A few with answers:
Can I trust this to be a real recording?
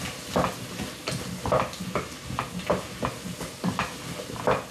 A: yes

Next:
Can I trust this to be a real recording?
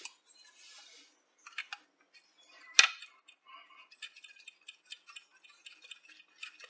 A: yes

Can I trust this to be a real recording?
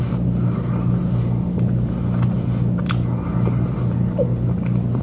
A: yes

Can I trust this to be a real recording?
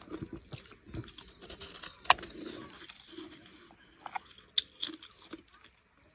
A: yes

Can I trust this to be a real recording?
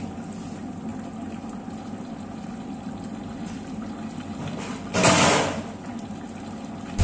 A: yes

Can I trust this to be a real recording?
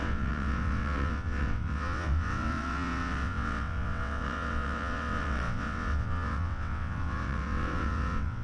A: no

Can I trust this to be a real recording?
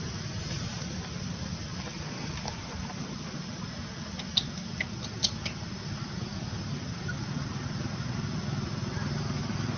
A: yes